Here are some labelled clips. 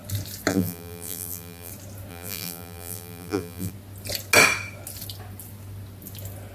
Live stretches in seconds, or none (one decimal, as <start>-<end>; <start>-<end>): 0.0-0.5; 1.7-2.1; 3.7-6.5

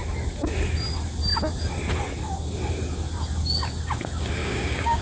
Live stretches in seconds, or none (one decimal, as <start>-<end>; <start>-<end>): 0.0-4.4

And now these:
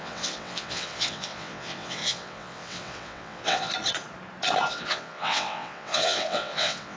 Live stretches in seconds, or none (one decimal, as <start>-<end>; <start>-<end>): 3.7-4.7

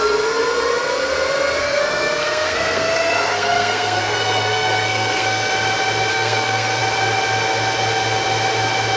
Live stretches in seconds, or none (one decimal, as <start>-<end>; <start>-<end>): 0.0-1.6; 5.5-6.1; 6.8-9.0

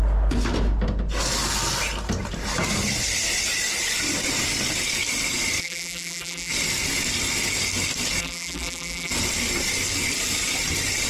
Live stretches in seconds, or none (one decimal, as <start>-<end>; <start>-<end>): 0.0-5.6; 6.5-8.2; 9.1-11.1